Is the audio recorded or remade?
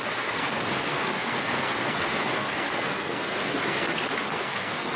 remade